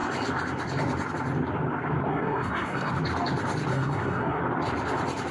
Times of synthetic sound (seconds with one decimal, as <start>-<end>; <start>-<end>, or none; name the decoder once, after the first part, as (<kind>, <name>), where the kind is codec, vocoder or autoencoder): 2.1-2.9 (codec, SNAC); 3.7-4.4